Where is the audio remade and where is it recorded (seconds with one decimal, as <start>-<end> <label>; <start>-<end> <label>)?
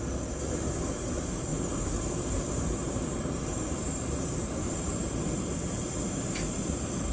0.0-7.1 remade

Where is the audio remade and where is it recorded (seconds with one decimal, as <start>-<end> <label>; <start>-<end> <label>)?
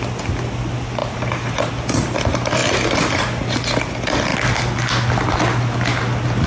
0.0-1.0 recorded; 1.0-1.7 remade; 1.7-6.5 recorded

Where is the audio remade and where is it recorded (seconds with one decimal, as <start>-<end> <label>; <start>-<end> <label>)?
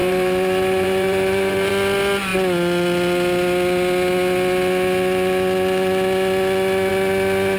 0.0-1.7 remade; 1.7-7.6 recorded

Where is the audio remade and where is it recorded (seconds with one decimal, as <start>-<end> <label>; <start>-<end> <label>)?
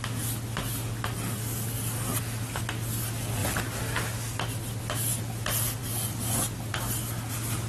0.0-7.7 recorded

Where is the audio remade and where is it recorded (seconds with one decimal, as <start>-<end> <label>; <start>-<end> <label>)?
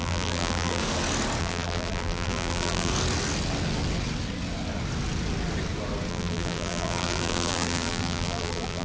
0.0-0.8 remade; 0.8-1.4 recorded; 1.4-2.9 remade; 2.9-6.1 recorded; 6.1-8.8 remade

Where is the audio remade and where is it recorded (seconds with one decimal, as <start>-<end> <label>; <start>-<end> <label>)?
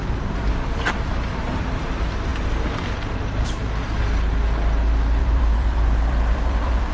0.0-2.3 recorded; 2.3-4.0 remade; 4.0-5.2 recorded; 5.2-6.9 remade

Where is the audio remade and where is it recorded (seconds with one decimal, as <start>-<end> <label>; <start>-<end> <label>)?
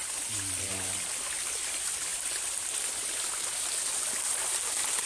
0.0-2.1 recorded; 2.1-3.7 remade; 3.7-5.1 recorded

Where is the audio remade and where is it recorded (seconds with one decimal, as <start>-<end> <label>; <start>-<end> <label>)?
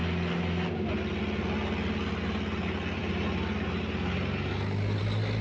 0.0-5.4 recorded